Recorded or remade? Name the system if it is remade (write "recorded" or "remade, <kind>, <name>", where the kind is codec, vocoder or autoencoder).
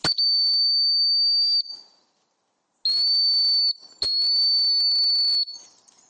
recorded